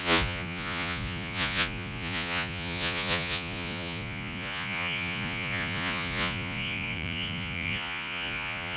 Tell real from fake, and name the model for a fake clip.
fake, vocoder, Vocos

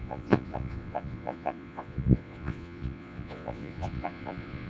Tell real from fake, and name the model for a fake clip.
fake, vocoder, Vocos